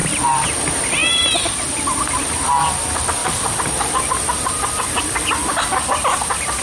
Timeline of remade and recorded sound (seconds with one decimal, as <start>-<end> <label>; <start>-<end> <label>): 0.0-0.6 remade; 0.6-1.0 recorded; 1.0-2.4 remade; 2.4-3.2 recorded; 3.2-4.0 remade; 4.0-6.6 recorded